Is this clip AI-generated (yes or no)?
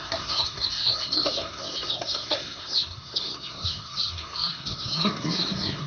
yes